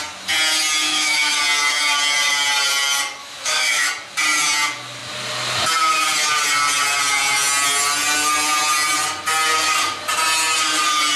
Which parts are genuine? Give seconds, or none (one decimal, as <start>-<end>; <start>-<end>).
0.0-0.9; 1.4-3.2; 3.9-11.2